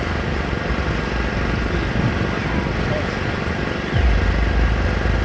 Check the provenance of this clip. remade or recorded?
recorded